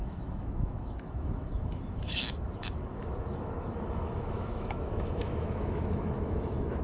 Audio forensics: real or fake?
fake